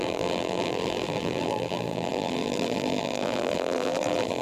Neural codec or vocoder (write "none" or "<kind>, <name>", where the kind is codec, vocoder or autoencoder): vocoder, BigVGAN v2